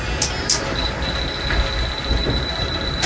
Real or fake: real